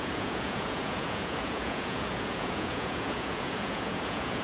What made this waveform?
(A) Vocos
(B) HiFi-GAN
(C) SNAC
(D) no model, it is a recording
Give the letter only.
A